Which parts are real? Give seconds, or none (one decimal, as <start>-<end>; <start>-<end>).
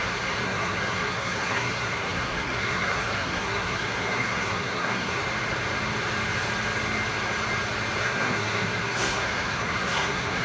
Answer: 5.2-8.0